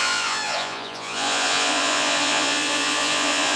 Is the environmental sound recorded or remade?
remade